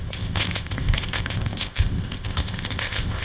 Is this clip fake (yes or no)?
yes